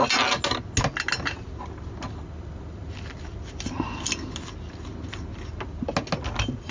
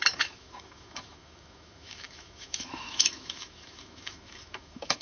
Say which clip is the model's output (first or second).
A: second